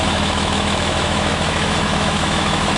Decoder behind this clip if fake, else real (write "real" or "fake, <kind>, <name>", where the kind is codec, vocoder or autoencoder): fake, autoencoder, DAC-VAE